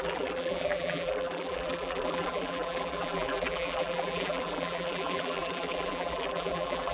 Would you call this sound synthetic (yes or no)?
yes